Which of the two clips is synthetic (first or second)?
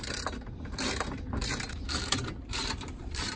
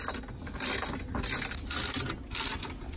first